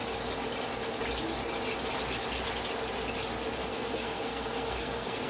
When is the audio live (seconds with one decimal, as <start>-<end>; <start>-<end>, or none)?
0.0-3.6